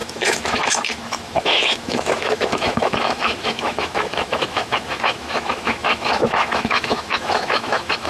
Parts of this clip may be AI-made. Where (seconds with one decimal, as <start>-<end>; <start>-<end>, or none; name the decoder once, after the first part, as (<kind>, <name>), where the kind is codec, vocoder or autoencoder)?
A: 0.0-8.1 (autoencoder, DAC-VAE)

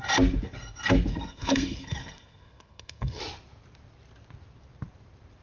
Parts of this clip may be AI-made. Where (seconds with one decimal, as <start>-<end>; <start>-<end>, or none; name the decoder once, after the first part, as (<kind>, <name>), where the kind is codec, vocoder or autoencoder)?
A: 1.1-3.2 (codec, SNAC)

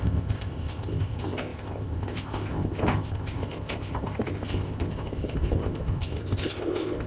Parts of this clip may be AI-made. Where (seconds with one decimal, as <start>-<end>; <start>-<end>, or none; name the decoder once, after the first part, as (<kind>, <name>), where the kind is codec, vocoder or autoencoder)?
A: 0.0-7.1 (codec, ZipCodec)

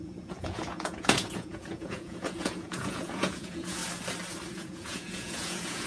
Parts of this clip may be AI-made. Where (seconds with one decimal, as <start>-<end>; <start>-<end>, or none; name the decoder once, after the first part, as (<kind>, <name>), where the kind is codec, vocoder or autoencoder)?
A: 0.0-3.8 (vocoder, Vocos); 4.5-5.9

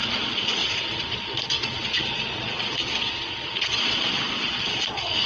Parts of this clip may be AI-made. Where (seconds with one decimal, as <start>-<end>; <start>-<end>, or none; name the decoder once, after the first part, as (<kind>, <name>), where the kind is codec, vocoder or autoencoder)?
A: 0.0-5.3 (vocoder, Vocos)

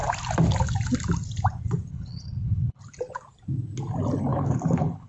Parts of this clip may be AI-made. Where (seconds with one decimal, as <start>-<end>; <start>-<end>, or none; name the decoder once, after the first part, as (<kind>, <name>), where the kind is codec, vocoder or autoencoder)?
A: 1.9-2.8 (codec, HILCodec); 4.3-5.1